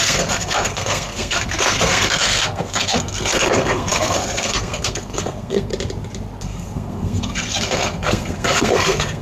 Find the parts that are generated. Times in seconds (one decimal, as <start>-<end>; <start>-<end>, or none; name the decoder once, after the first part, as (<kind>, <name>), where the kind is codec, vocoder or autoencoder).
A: 0.0-5.7 (codec, SNAC); 6.4-9.2